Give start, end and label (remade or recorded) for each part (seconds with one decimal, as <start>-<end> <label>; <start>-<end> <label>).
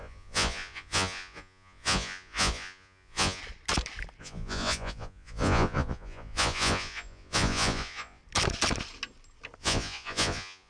0.0-3.4 remade; 3.4-4.2 recorded; 4.2-8.2 remade; 8.2-9.6 recorded; 9.6-10.7 remade